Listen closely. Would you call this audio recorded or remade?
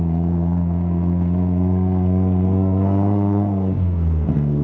remade